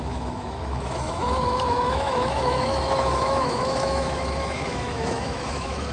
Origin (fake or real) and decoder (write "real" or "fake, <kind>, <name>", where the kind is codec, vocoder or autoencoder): fake, autoencoder, DAC-VAE